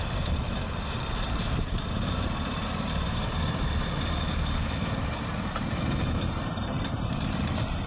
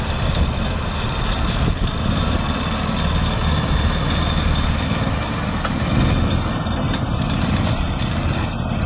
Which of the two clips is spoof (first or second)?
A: first